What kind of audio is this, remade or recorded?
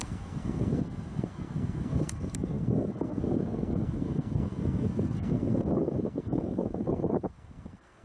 remade